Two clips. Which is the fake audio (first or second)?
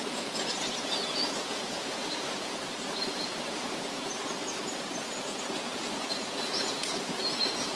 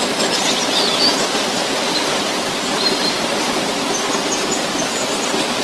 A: first